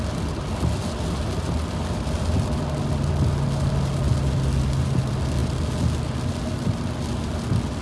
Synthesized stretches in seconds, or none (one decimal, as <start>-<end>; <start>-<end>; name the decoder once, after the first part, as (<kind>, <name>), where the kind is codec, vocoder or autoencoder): none

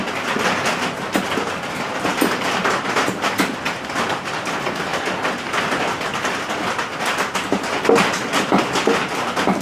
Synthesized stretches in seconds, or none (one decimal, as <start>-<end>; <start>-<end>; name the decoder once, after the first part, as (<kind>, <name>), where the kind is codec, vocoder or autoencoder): none